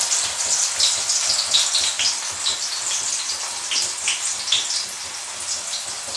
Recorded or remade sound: recorded